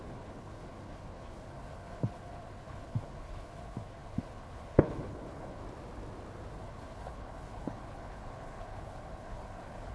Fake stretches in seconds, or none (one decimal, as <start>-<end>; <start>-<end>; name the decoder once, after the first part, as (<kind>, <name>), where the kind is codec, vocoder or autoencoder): 0.0-5.6 (codec, HILCodec); 6.5-9.9